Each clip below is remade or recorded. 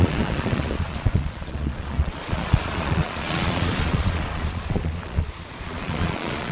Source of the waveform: remade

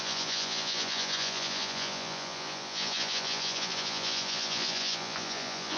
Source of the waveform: remade